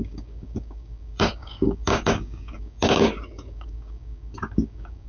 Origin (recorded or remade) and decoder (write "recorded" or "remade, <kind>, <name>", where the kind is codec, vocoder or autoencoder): remade, codec, DAC